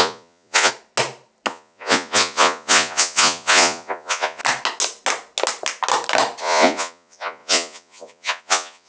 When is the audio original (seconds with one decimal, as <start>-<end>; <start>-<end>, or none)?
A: 0.7-1.5; 4.4-6.4